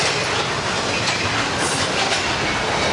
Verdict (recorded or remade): recorded